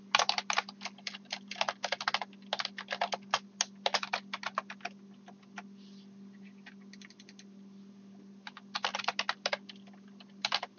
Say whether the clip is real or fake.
real